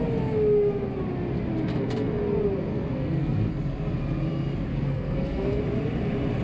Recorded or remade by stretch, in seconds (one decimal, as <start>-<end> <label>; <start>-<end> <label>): 0.0-1.7 recorded; 1.7-2.2 remade; 2.2-2.7 recorded; 2.7-3.5 remade; 3.5-4.7 recorded; 4.7-5.6 remade; 5.6-6.4 recorded

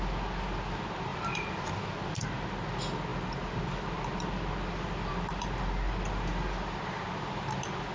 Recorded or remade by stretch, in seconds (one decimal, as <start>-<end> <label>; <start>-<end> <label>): 0.0-7.9 recorded

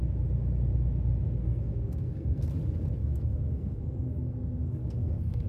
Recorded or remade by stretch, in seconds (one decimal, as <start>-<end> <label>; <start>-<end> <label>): 0.0-1.4 recorded; 1.4-2.5 remade; 2.5-3.0 recorded; 3.0-5.5 remade

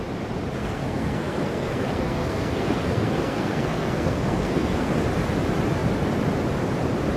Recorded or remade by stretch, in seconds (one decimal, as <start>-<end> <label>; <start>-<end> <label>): 0.0-0.6 recorded; 0.6-4.9 remade; 4.9-7.2 recorded

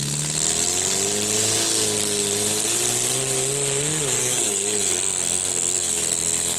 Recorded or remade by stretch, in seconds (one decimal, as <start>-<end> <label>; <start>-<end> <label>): 0.0-4.2 recorded; 4.2-6.6 remade

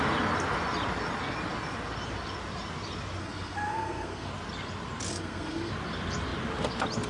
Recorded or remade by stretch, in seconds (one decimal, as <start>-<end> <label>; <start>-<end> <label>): 0.0-3.2 recorded; 3.2-4.3 remade; 4.3-5.1 recorded; 5.1-5.7 remade; 5.7-7.1 recorded

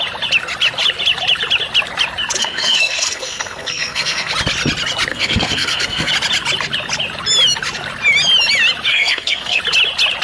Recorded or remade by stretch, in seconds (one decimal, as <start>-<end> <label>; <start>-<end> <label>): 0.0-2.4 recorded; 2.4-4.3 remade; 4.3-5.1 recorded; 5.1-6.1 remade; 6.1-8.9 recorded; 8.9-9.6 remade; 9.6-10.2 recorded

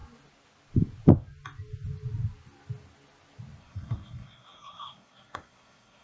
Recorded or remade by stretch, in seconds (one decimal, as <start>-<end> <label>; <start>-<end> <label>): 0.0-3.6 recorded; 3.6-6.0 remade